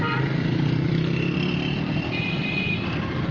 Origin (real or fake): fake